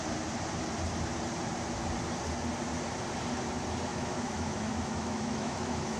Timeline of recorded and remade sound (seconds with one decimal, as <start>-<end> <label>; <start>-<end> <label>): 0.0-3.9 recorded; 3.9-6.0 remade